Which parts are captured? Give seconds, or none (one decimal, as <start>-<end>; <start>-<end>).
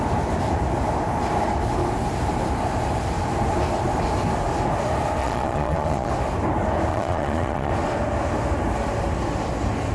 0.0-5.2; 6.1-6.9; 7.7-9.9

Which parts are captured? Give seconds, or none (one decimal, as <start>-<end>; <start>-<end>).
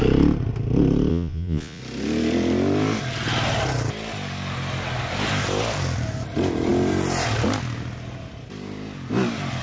0.0-1.1; 1.8-9.6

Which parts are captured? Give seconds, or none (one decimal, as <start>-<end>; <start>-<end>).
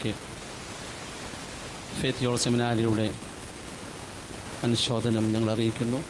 0.0-3.1; 3.9-4.8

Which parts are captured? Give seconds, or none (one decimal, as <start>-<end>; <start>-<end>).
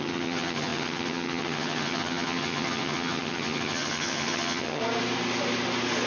4.8-6.1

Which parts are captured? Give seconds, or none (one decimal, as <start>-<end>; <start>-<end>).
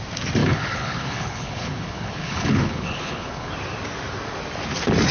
0.0-0.4; 3.5-5.1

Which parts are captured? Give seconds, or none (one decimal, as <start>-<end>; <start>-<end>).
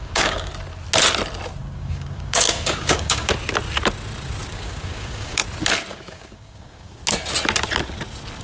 0.5-1.6; 3.3-4.5; 5.4-5.9; 7.0-8.4